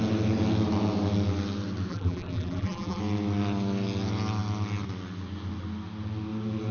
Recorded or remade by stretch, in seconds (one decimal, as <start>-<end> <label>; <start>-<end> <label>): 0.0-1.9 recorded; 1.9-3.0 remade; 3.0-6.7 recorded